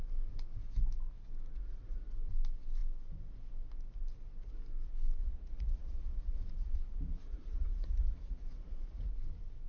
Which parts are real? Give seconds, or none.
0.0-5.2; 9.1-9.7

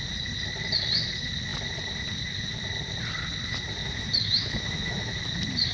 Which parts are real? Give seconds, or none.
0.0-3.8; 5.2-5.7

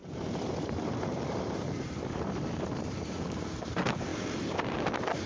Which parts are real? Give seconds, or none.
none

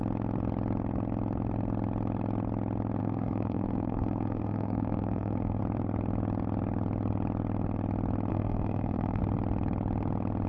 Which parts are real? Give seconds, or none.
0.0-3.0; 5.6-8.3; 9.2-10.5

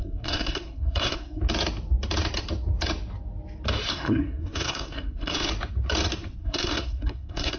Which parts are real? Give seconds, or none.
1.4-3.9; 5.5-6.4

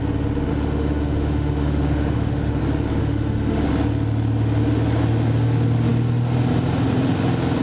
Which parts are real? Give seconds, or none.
0.0-0.5; 2.6-3.0; 3.7-7.6

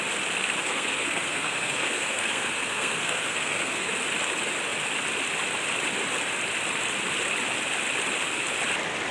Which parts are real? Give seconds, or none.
0.0-0.6; 3.9-9.1